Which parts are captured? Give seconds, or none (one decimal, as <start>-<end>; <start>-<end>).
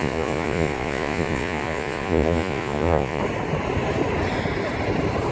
3.2-5.3